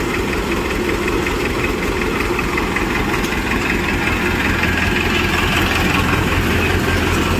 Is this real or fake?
real